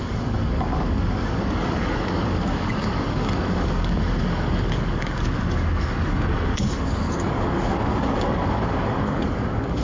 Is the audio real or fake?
fake